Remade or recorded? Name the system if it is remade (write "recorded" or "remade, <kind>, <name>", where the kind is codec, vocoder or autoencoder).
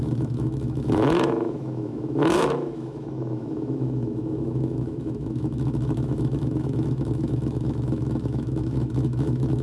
remade, autoencoder, DAC-VAE